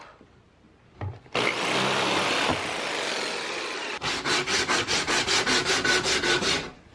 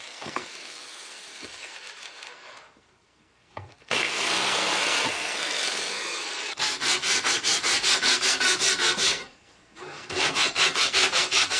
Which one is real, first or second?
first